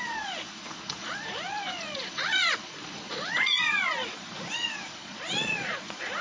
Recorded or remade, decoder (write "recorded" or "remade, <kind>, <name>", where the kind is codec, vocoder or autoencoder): remade, vocoder, Vocos